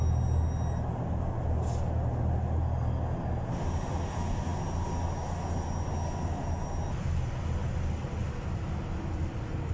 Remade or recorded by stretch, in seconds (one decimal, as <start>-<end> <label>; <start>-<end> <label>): 0.0-9.7 recorded